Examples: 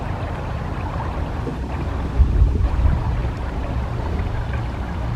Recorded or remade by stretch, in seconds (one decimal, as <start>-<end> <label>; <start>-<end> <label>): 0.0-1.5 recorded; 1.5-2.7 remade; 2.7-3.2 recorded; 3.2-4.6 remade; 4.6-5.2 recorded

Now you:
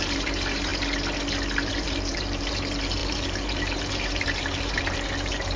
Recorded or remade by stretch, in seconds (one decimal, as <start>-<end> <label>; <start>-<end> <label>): 0.0-0.7 remade; 0.7-1.7 recorded; 1.7-5.6 remade

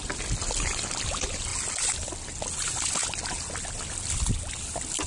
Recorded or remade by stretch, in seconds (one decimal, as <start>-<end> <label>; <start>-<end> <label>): 0.0-5.1 recorded

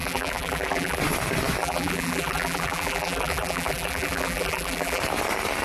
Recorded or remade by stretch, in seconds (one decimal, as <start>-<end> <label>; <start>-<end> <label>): 0.0-1.0 remade; 1.0-1.6 recorded; 1.6-5.0 remade; 5.0-5.6 recorded

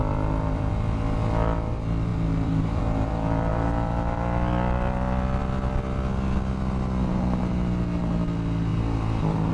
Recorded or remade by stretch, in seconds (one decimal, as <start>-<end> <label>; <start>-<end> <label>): 0.0-0.7 remade; 0.7-2.1 recorded; 2.1-2.8 remade; 2.8-8.7 recorded; 8.7-9.5 remade